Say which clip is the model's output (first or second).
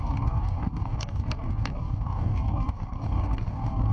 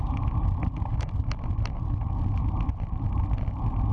first